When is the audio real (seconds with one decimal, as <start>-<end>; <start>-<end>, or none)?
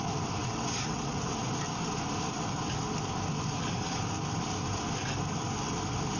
0.0-0.4; 1.3-6.2